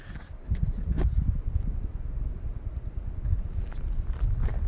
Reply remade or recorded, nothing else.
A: recorded